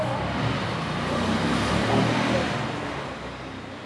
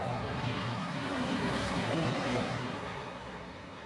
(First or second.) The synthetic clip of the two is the second